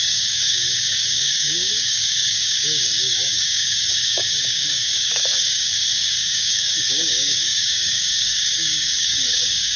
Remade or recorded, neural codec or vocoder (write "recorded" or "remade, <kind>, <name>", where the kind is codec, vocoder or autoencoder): remade, codec, DAC